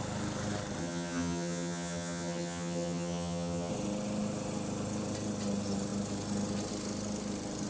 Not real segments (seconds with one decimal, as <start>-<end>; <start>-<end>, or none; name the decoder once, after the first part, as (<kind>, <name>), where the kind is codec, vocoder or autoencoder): 0.8-3.7 (vocoder, HiFi-GAN)